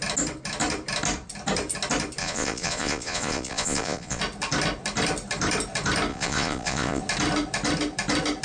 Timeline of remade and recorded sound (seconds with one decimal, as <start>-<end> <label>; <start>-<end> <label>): 0.0-2.2 recorded; 2.2-4.2 remade; 4.2-6.1 recorded; 6.1-7.0 remade; 7.0-8.4 recorded